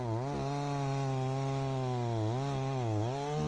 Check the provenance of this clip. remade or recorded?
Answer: recorded